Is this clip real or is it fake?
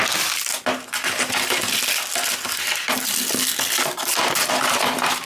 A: real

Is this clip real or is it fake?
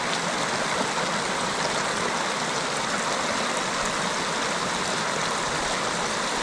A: real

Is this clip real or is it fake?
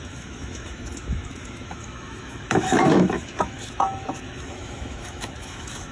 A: fake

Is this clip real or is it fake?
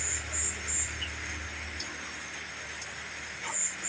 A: real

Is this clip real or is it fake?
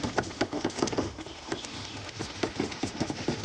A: fake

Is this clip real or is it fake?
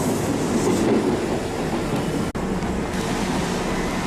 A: real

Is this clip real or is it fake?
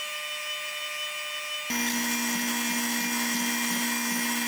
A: real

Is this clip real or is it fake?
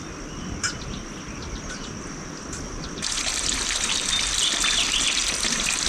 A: real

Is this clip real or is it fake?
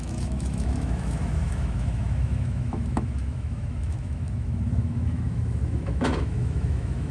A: fake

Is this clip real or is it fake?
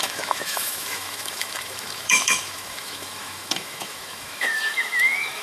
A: fake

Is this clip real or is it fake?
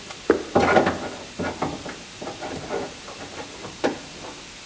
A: real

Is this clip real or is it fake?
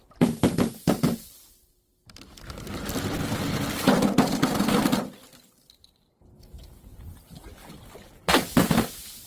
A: real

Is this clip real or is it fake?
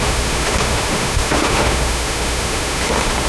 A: fake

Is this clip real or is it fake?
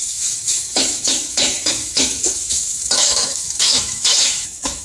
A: fake